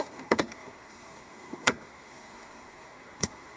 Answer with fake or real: fake